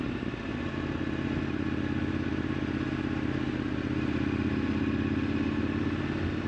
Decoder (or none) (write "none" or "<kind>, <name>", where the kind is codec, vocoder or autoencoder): none